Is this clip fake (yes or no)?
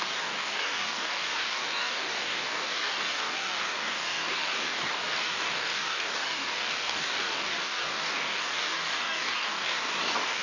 yes